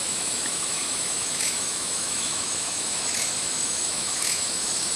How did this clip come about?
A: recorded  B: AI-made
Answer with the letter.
B